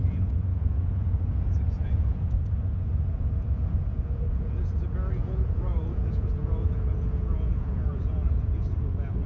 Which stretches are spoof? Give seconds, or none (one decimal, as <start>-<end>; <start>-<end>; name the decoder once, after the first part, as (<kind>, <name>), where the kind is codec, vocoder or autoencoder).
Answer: 0.0-9.3 (vocoder, Vocos)